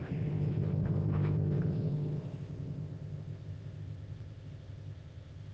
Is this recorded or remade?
remade